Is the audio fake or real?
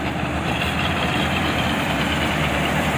fake